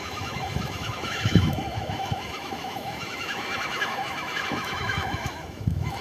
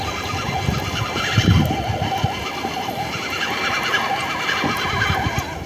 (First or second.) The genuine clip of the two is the second